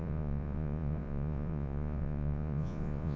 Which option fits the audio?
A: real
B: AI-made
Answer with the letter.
B